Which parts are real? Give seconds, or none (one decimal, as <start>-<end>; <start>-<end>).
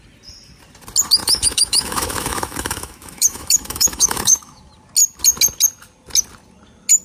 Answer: 0.0-1.2; 4.6-7.0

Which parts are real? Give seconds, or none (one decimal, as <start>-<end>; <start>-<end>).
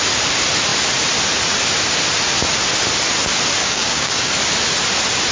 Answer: 0.0-3.6; 4.3-5.3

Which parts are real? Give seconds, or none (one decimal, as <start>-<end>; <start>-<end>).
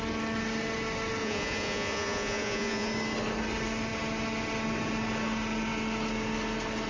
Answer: 0.0-1.2; 2.9-6.9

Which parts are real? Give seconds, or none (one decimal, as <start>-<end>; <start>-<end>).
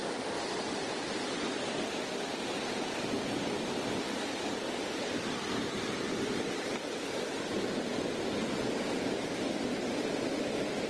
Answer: 4.6-10.9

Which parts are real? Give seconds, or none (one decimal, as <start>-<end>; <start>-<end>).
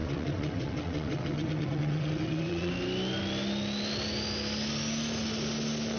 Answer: 2.7-6.0